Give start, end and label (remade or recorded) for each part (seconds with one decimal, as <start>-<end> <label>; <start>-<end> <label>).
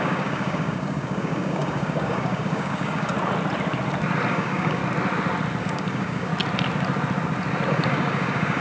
0.0-3.1 remade; 3.1-4.3 recorded; 4.3-4.8 remade; 4.8-5.6 recorded; 5.6-6.3 remade; 6.3-7.7 recorded; 7.7-8.6 remade